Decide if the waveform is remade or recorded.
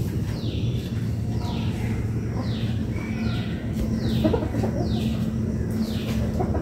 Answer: recorded